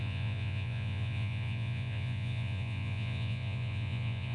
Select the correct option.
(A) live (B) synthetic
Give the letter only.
B